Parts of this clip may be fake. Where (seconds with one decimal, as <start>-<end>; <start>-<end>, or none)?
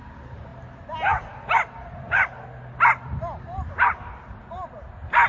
none